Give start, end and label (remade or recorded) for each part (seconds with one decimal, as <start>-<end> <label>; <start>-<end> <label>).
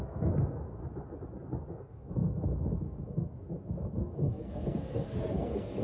0.0-0.8 remade; 0.8-1.7 recorded; 1.7-5.8 remade